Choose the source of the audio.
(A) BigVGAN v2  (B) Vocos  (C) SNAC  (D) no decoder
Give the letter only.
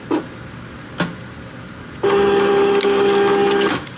D